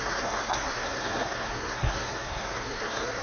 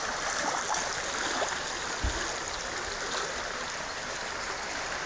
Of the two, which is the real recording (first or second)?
second